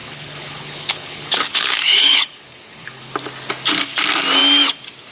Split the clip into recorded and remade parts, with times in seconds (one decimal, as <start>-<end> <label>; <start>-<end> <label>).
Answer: 0.0-3.1 remade; 3.1-5.1 recorded